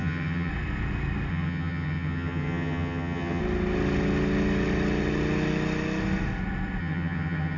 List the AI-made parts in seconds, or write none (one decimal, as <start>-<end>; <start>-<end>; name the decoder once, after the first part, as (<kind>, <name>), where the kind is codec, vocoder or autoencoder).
0.0-0.5 (vocoder, HiFi-GAN); 1.3-3.4; 6.8-7.6